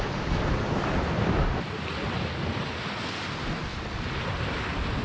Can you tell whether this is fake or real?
real